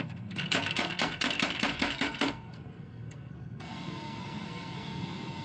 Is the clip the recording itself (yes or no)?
no